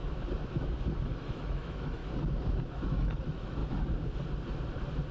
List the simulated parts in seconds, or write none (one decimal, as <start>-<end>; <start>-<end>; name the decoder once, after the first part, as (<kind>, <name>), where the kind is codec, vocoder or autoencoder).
1.1-2.0 (autoencoder, DAC-VAE); 2.7-3.6